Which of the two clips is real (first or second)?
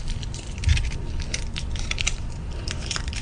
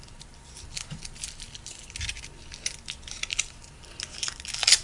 second